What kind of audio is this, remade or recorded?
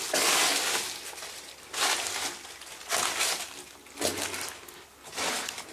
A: recorded